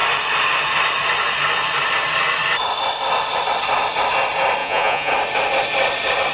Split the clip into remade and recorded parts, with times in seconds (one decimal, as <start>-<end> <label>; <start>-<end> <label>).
0.0-4.6 recorded; 4.6-5.1 remade; 5.1-6.3 recorded